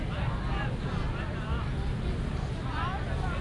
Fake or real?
fake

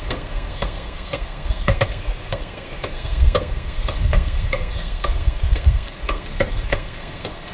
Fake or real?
fake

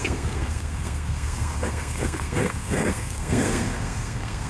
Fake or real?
fake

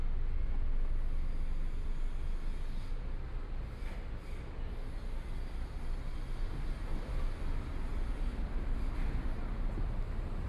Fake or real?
real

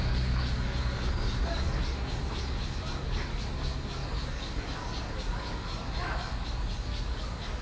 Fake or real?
fake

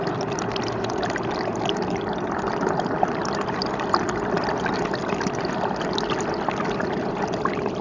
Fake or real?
real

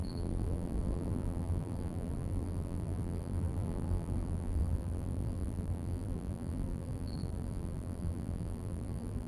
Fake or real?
fake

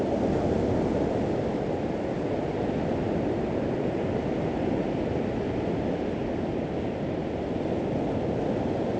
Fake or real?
real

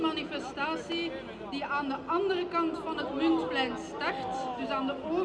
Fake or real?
real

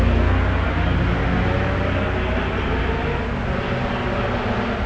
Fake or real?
real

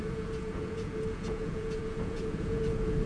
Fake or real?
fake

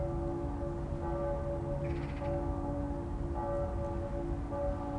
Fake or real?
real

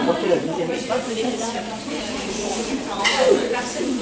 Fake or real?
fake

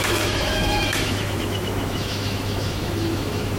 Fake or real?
fake